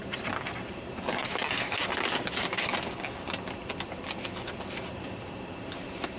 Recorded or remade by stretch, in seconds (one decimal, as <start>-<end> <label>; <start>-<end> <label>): 0.0-1.2 remade; 1.2-4.9 recorded; 4.9-6.2 remade